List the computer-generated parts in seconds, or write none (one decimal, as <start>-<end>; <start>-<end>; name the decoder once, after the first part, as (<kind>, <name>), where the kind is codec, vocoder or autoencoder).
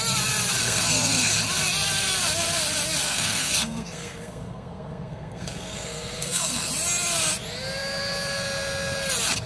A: 0.6-1.3 (codec, SNAC); 3.0-6.7